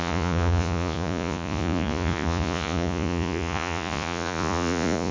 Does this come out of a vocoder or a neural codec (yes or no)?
yes